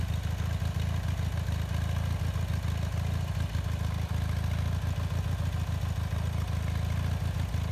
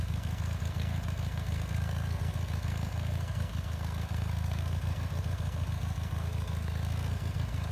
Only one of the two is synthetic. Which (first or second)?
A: second